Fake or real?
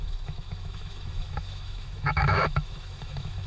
fake